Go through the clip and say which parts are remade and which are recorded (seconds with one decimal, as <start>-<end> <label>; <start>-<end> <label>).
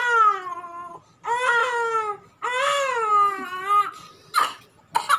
0.0-5.2 recorded